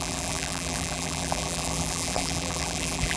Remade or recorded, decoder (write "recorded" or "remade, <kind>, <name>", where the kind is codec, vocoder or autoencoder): remade, vocoder, BigVGAN v2